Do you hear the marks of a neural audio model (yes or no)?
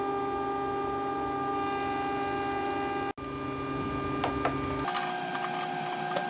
no